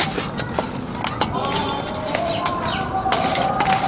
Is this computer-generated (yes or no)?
no